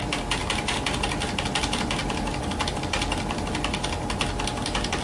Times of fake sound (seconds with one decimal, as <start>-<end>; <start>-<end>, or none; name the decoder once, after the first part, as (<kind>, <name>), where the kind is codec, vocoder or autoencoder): none